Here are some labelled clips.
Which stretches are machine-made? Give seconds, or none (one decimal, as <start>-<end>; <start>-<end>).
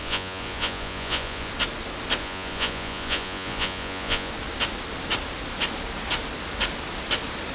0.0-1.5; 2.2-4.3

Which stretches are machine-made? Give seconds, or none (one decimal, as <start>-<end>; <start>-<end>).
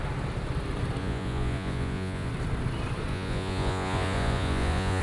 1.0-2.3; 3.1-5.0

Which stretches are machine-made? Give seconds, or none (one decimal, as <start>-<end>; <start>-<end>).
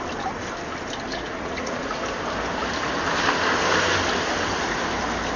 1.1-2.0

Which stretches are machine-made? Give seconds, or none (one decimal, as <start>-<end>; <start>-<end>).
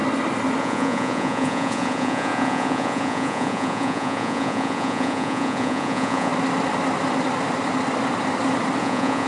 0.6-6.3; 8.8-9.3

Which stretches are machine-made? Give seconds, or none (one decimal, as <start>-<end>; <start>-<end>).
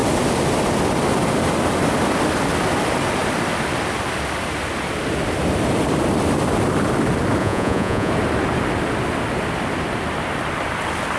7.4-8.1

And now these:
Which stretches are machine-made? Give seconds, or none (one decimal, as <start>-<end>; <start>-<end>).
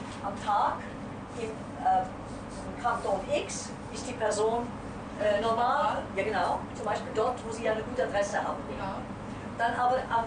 8.3-8.8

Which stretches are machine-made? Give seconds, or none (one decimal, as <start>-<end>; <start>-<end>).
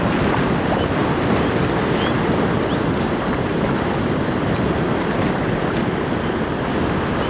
none